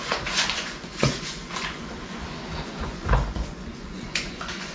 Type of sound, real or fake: fake